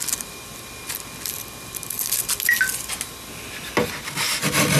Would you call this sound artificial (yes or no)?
no